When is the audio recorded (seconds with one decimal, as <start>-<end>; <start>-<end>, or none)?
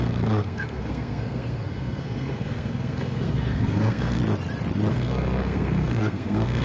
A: 4.2-4.9